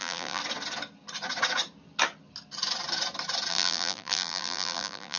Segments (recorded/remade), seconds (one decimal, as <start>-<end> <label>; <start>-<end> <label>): 0.0-0.4 remade; 0.4-3.5 recorded; 3.5-5.2 remade